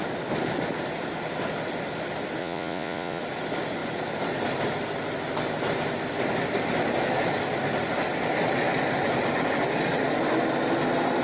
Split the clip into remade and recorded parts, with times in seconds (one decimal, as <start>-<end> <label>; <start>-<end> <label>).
0.0-2.4 recorded; 2.4-3.2 remade; 3.2-11.2 recorded